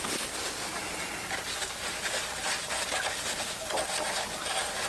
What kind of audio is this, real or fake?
real